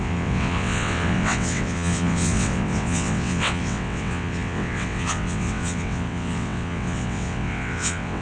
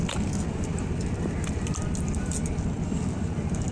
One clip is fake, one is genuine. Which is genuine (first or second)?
second